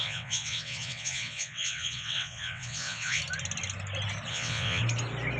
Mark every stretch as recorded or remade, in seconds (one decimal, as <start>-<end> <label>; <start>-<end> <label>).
0.0-3.2 remade; 3.2-4.3 recorded; 4.3-4.8 remade; 4.8-5.4 recorded